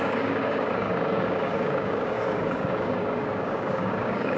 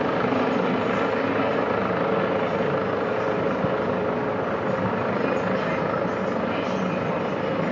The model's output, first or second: first